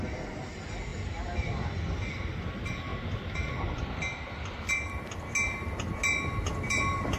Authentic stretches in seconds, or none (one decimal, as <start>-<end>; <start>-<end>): 0.0-7.2

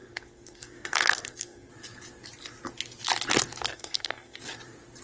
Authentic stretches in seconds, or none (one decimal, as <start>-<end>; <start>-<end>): 1.7-3.7; 4.4-5.0

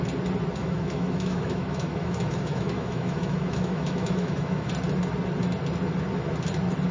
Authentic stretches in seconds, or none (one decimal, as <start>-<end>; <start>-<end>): 0.0-0.6; 4.7-6.9

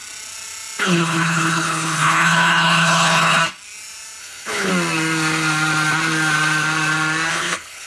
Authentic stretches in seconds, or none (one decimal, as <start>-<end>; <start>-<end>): 0.0-0.8; 3.4-4.2; 4.7-7.3

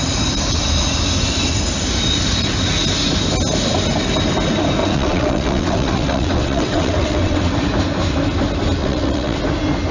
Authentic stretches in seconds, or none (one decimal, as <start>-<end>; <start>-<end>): 0.0-4.8; 7.5-8.8; 9.4-9.9

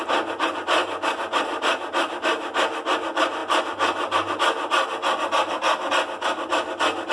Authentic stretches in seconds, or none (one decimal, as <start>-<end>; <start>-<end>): 0.0-7.1

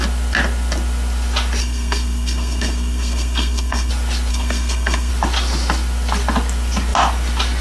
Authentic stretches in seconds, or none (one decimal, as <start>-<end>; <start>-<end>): 0.0-1.6; 3.9-4.3; 5.1-7.6